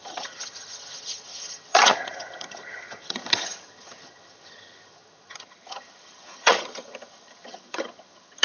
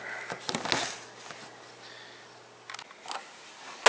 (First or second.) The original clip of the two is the second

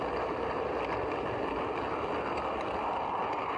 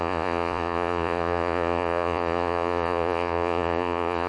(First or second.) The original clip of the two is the first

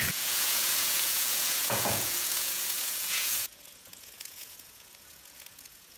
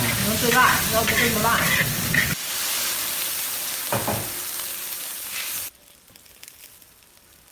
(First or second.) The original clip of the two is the second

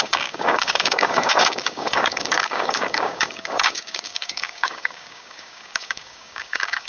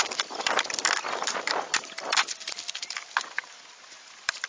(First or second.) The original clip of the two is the second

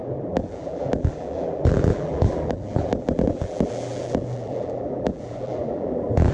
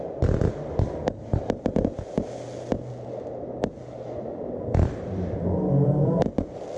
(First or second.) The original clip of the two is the second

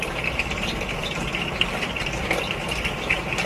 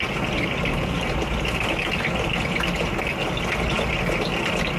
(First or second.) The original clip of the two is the second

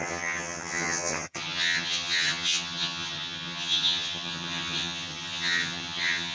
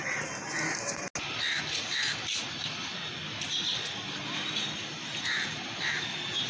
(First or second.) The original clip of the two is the second